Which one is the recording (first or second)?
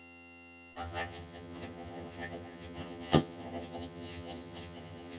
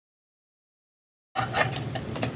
second